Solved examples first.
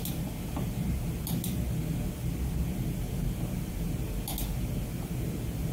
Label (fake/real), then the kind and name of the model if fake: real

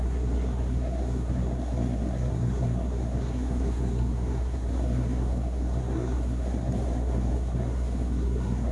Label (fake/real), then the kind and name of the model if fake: fake, codec, SNAC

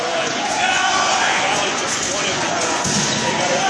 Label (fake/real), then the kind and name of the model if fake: fake, vocoder, Vocos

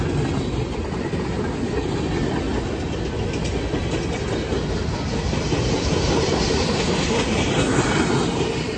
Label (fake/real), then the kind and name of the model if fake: real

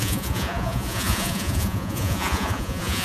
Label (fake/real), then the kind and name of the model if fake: fake, vocoder, Vocos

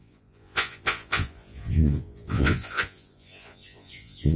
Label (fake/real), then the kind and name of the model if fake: fake, vocoder, Vocos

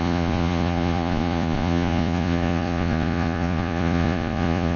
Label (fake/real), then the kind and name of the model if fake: fake, vocoder, Vocos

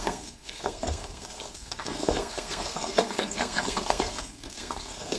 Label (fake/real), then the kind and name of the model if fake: fake, codec, SNAC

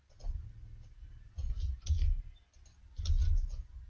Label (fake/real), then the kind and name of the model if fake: real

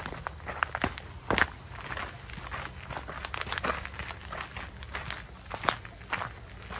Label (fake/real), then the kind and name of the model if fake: real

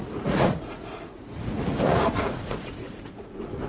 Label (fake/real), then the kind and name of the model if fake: fake, vocoder, Vocos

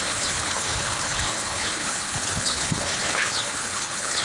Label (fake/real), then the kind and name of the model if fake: fake, codec, HILCodec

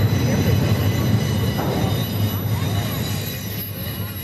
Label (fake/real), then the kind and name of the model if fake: real